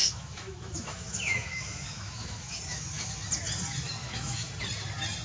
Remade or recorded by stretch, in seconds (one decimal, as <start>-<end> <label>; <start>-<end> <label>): 0.0-3.1 remade; 3.1-4.0 recorded; 4.0-4.5 remade; 4.5-5.2 recorded

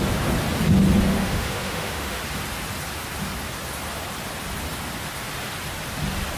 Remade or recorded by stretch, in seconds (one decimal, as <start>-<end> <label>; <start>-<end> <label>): 0.0-1.1 recorded; 1.1-2.2 remade; 2.2-6.4 recorded

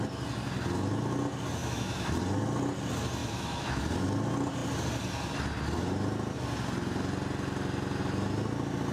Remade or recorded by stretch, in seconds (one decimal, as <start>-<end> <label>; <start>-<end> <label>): 0.0-1.6 recorded; 1.6-2.1 remade; 2.1-3.2 recorded; 3.2-3.8 remade; 3.8-8.9 recorded

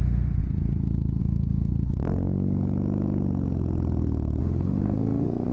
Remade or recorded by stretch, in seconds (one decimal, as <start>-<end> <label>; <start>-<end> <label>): 0.0-0.4 remade; 0.4-1.2 recorded; 1.2-1.7 remade; 1.7-4.4 recorded; 4.4-5.5 remade

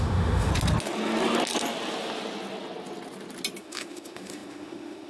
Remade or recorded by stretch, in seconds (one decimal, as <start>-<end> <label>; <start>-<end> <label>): 0.0-0.5 remade; 0.5-3.6 recorded; 3.6-5.1 remade